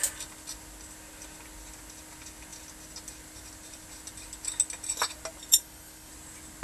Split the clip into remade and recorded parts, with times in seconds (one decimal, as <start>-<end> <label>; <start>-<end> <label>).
0.0-5.6 recorded; 5.6-6.1 remade; 6.1-6.6 recorded